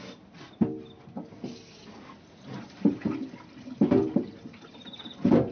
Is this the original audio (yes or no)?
yes